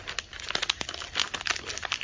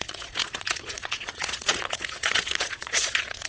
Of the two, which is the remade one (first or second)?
second